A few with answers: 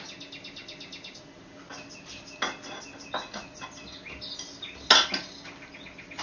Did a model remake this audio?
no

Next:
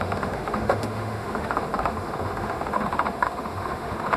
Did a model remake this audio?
yes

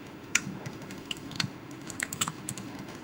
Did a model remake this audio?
yes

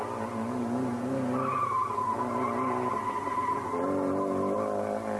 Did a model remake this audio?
no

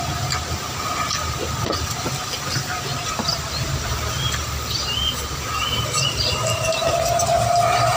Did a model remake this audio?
no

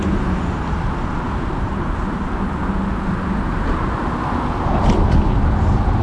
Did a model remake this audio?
no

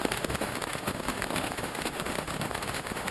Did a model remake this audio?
yes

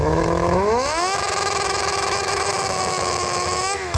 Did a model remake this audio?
yes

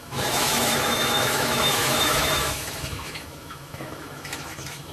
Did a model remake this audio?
yes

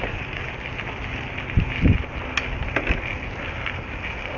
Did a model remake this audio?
no